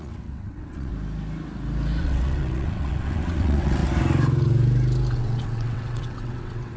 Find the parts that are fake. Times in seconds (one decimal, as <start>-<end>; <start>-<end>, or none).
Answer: 0.0-0.9; 2.0-3.8; 5.1-6.8